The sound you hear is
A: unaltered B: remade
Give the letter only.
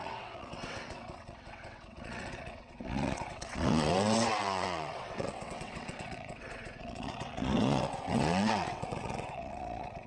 B